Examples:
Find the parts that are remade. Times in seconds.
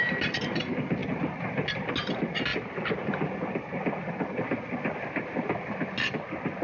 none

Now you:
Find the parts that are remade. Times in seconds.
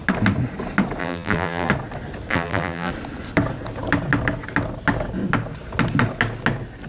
1.0-1.7 (vocoder, BigVGAN v2); 2.3-2.9